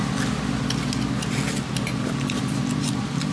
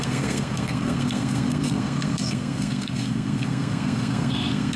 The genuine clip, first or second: first